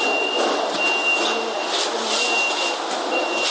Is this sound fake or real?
real